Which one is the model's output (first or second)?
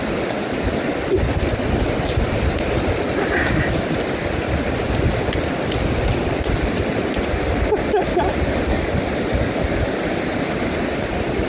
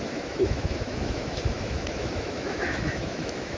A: second